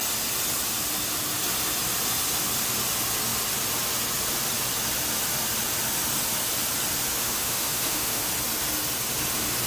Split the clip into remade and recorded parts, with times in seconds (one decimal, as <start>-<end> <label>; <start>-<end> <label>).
0.0-7.2 recorded; 7.2-8.3 remade; 8.3-9.7 recorded